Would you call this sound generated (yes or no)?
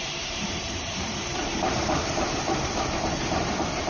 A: yes